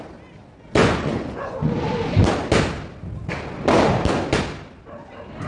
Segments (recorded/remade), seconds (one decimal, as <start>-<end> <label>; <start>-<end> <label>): 0.0-0.8 recorded; 0.8-1.7 remade; 1.7-5.5 recorded